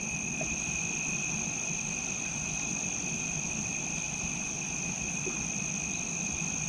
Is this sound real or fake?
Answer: real